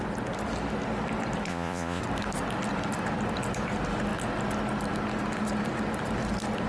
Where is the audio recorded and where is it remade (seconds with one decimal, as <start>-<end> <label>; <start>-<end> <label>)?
0.0-1.5 recorded; 1.5-2.0 remade; 2.0-6.7 recorded